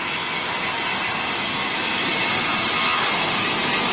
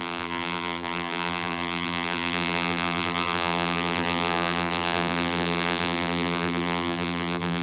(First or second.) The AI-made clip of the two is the second